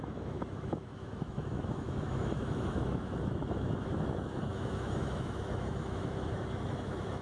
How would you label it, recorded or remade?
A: remade